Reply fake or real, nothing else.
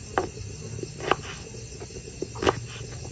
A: real